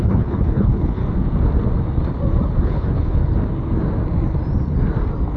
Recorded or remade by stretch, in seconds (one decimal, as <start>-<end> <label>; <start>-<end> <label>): 0.0-1.0 remade; 1.0-2.6 recorded; 2.6-3.2 remade; 3.2-5.4 recorded